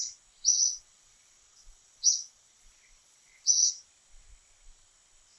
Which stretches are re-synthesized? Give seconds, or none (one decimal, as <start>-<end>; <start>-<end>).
0.5-3.7